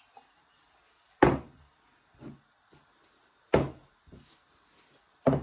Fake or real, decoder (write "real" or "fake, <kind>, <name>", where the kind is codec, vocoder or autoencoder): real